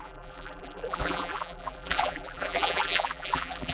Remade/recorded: remade